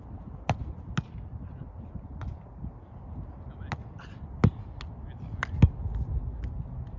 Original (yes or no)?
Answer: yes